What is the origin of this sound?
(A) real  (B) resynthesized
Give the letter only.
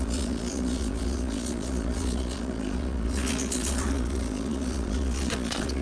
B